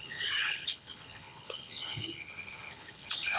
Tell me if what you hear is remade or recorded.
remade